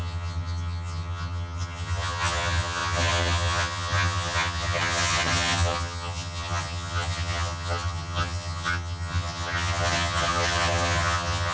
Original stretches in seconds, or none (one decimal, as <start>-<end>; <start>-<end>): none